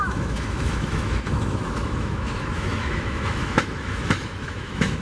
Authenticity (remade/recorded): remade